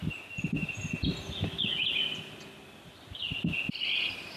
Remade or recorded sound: recorded